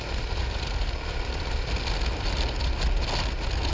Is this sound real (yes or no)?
yes